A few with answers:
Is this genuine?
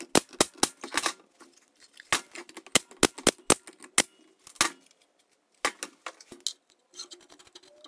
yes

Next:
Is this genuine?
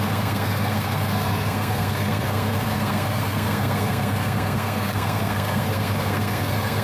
no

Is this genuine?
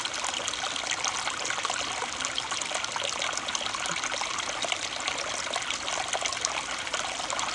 yes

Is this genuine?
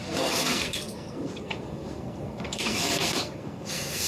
no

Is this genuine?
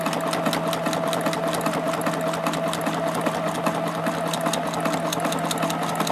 yes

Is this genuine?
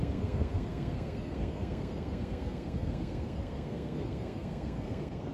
no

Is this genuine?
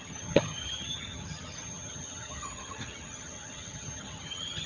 no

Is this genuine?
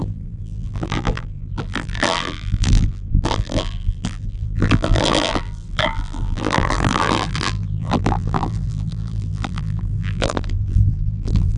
no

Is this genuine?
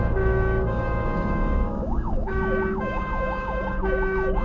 no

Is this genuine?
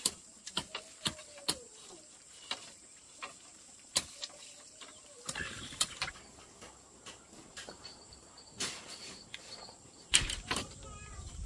no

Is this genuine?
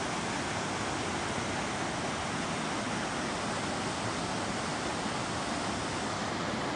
yes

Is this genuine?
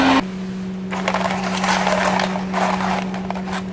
yes